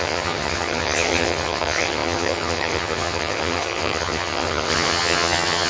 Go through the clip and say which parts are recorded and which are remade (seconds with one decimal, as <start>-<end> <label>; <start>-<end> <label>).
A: 0.0-5.7 remade